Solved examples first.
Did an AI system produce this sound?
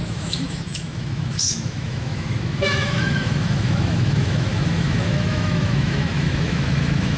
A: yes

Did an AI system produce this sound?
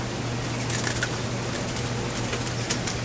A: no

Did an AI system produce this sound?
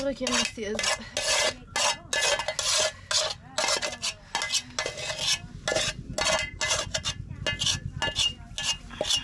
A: no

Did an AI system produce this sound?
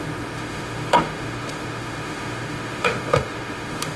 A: yes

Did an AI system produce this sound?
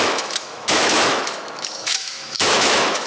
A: yes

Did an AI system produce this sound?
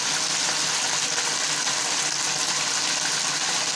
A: no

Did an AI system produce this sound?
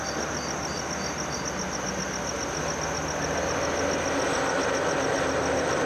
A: no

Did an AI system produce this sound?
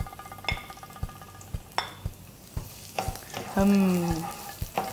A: no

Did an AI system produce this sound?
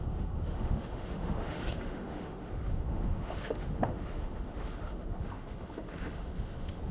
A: yes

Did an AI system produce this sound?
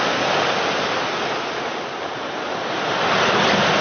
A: no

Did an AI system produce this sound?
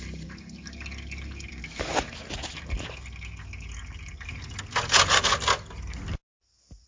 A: no